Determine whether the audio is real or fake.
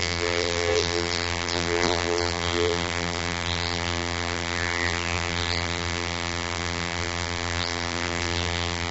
fake